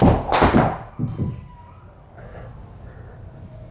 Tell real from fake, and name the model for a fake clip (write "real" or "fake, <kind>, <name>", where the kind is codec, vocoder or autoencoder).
real